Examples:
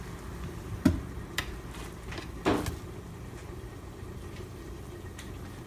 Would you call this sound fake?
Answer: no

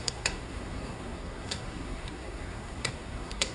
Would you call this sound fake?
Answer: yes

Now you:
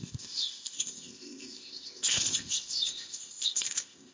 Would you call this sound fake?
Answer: yes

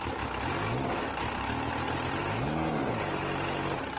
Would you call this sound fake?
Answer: no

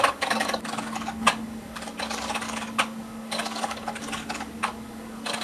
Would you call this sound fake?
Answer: yes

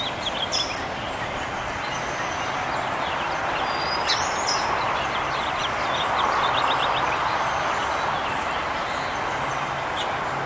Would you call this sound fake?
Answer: no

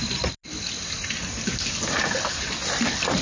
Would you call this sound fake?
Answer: no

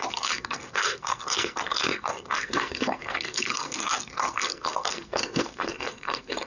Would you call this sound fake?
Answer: yes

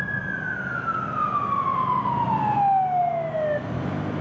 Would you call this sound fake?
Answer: no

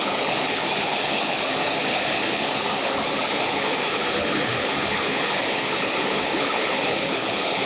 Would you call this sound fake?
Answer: yes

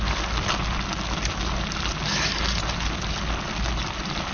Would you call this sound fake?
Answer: no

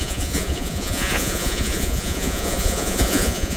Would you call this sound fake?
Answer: yes